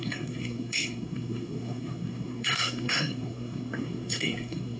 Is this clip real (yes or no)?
no